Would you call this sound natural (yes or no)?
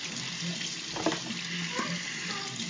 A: yes